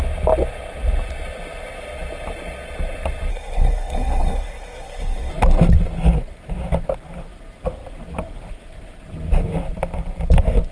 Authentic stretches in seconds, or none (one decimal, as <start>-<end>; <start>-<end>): 0.0-3.3; 5.3-10.7